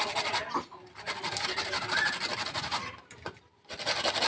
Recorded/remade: recorded